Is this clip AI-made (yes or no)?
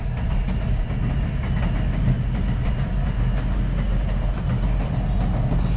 no